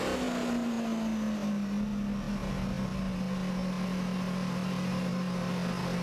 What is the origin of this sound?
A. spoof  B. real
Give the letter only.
B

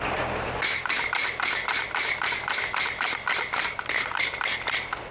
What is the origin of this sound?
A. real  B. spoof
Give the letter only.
A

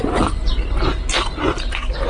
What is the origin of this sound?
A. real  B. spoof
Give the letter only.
A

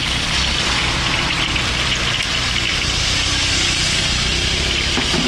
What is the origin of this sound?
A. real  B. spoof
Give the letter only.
A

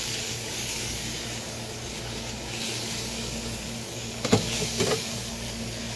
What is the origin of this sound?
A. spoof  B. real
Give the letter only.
A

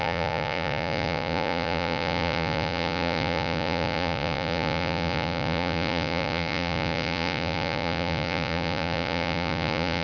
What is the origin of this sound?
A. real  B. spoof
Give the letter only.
B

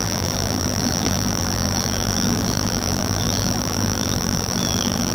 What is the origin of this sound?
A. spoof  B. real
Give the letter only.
A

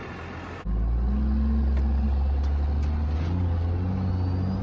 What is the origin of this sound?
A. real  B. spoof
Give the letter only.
A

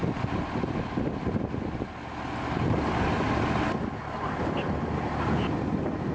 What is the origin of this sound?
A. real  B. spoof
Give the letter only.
A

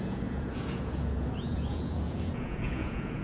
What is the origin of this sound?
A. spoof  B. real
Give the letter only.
A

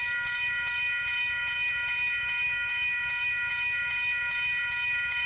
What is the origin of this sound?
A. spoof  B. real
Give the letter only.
A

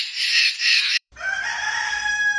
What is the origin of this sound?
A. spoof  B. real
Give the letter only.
A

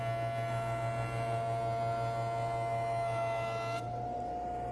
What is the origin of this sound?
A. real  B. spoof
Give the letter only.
A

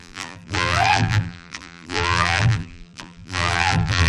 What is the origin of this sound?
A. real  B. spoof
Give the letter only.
B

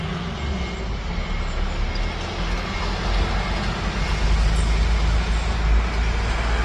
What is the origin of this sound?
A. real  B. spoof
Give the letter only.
A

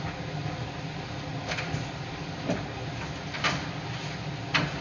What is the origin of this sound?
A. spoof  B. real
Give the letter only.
B